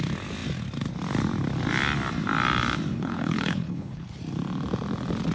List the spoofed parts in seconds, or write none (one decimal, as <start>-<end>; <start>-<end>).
2.9-4.2